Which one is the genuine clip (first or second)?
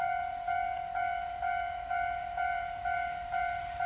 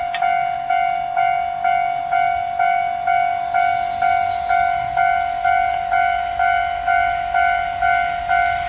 second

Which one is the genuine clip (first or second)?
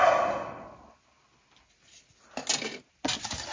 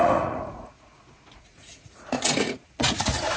first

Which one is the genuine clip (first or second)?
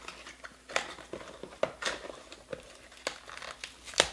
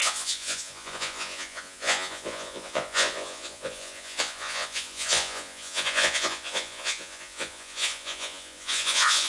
first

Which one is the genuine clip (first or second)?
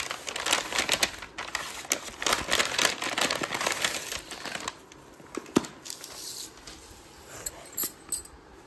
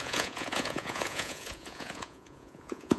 first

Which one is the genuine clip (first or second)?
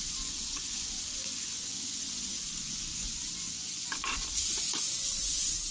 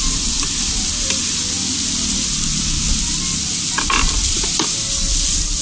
second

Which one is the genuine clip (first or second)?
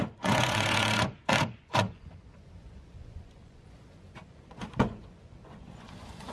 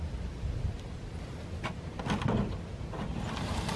second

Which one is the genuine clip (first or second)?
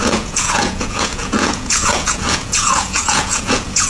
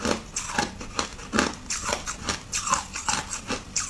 second